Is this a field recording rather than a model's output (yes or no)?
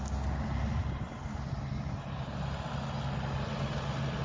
yes